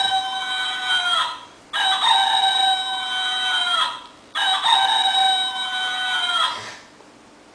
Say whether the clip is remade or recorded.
recorded